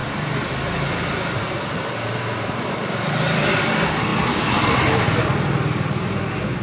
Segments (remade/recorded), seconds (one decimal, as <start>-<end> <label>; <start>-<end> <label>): 0.0-2.8 remade; 2.8-6.6 recorded